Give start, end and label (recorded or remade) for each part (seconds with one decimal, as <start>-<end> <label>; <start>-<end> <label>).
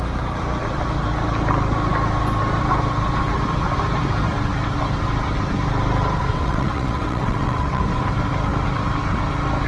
0.0-6.3 recorded; 6.3-7.8 remade; 7.8-9.7 recorded